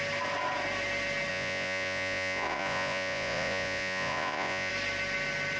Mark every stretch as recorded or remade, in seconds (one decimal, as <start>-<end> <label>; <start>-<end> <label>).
0.0-1.3 recorded; 1.3-4.7 remade; 4.7-5.6 recorded